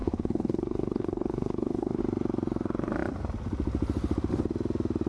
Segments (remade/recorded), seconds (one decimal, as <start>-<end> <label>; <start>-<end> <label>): 0.0-2.0 remade; 2.0-5.1 recorded